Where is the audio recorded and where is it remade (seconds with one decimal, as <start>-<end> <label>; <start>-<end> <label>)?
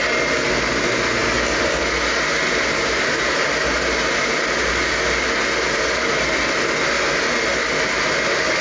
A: 0.0-2.5 recorded; 2.5-4.9 remade; 4.9-8.6 recorded